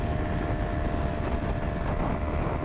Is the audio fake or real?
real